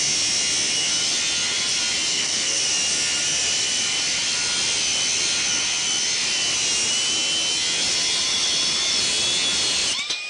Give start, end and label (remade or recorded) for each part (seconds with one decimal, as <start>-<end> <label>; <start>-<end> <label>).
0.0-2.1 recorded; 2.1-2.6 remade; 2.6-10.3 recorded